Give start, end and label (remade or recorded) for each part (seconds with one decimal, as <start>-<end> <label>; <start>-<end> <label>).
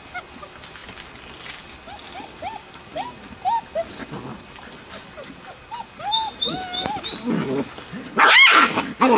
0.0-9.2 recorded